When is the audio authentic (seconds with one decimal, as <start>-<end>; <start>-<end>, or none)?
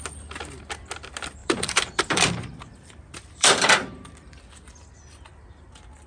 0.0-1.4; 3.9-6.1